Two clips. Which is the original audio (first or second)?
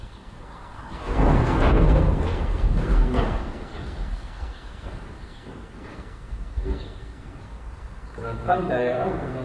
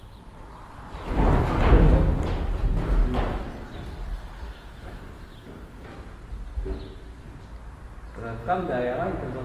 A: second